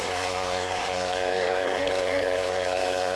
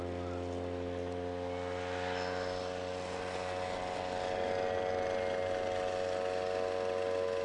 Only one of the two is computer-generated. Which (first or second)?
first